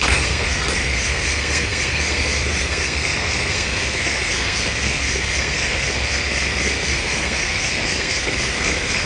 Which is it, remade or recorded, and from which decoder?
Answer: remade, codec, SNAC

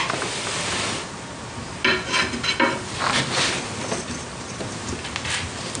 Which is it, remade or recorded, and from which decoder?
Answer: recorded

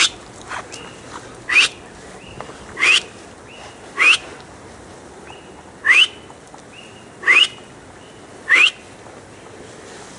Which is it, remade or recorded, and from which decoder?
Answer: recorded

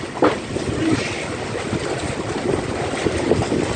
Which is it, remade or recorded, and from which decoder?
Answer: recorded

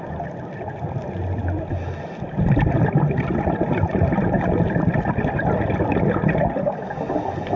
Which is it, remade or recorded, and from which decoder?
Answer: recorded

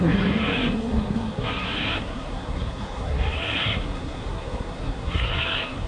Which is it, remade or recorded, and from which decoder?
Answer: remade, codec, SNAC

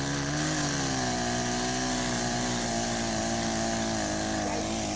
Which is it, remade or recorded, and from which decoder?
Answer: recorded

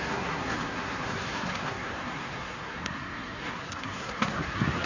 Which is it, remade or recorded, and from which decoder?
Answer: remade, codec, SNAC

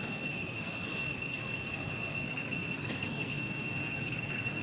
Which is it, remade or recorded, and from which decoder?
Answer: remade, codec, SNAC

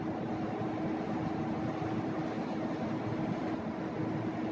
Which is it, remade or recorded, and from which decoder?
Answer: recorded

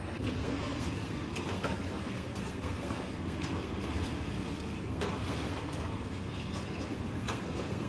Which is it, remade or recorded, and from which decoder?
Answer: remade, codec, SNAC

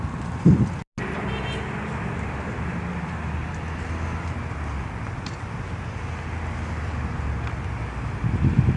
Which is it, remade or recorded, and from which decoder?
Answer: recorded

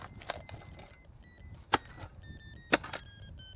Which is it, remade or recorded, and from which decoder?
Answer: recorded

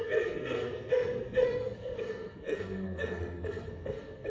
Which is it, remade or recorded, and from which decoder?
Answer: remade, codec, SNAC